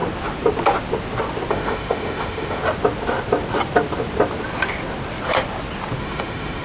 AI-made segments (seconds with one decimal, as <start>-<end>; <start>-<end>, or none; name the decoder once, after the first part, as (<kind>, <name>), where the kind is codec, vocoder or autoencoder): 1.5-2.6 (autoencoder, DAC-VAE); 6.0-6.6